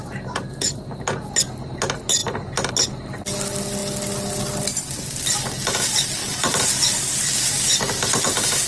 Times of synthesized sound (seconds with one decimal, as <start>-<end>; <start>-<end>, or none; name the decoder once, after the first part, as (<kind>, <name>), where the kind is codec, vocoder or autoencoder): 2.2-2.7 (vocoder, BigVGAN v2)